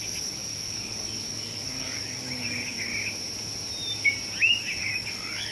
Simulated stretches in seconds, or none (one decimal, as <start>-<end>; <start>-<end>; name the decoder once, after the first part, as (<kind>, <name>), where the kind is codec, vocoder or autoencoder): 0.0-2.9 (codec, DAC); 4.6-5.5